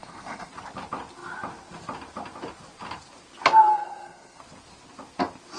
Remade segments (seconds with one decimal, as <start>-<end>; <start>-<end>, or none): 0.0-0.5; 3.7-4.4